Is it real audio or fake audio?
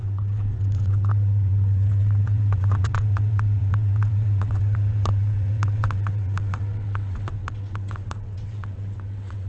fake